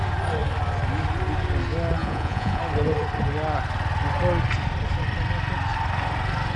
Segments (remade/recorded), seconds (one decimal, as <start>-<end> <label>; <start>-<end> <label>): 0.0-2.0 recorded; 2.0-2.6 remade; 2.6-6.6 recorded